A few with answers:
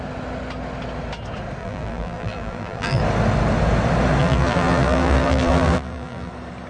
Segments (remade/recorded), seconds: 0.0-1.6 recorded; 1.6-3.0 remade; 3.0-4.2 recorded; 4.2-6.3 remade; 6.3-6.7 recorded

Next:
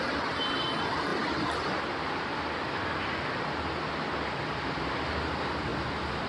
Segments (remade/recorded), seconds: 0.0-6.3 recorded

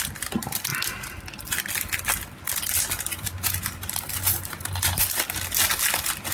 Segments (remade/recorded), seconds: 0.0-3.1 recorded; 3.1-5.2 remade; 5.2-6.3 recorded

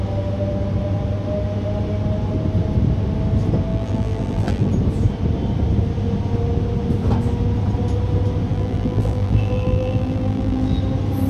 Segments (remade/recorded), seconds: 0.0-3.7 recorded; 3.7-4.7 remade; 4.7-8.5 recorded; 8.5-10.8 remade; 10.8-11.3 recorded

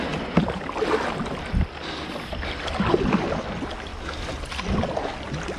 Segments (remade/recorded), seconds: 0.0-5.6 recorded

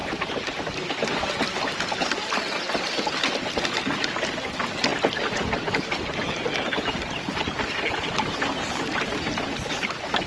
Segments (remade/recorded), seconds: 0.0-10.3 recorded